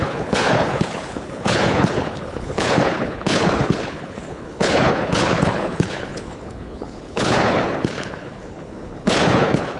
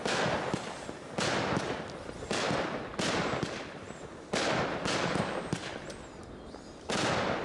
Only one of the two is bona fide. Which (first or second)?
second